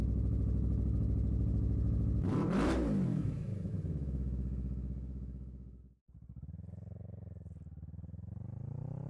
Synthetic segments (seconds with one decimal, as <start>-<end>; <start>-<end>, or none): 3.1-5.8